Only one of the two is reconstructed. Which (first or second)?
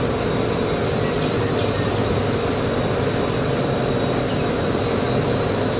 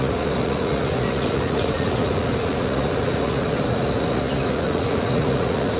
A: second